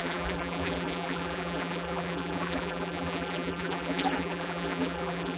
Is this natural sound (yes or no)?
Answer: no